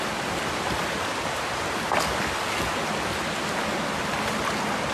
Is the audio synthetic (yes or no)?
no